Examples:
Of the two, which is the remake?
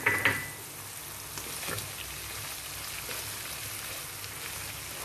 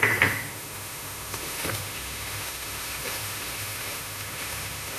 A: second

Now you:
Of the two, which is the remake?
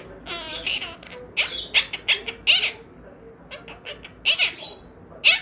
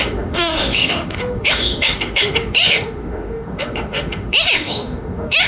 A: second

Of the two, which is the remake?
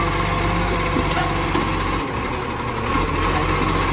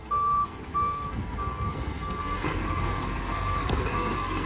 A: second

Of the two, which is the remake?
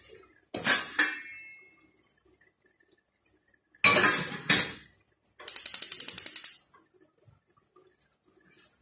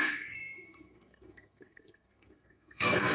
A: second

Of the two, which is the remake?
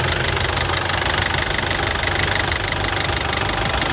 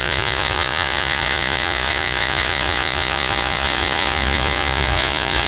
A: second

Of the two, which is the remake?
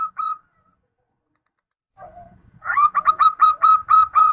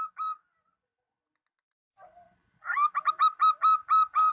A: first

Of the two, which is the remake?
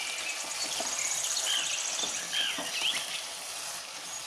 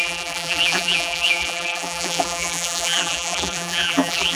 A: second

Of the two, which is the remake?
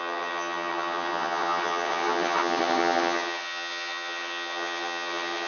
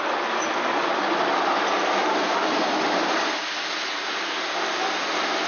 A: first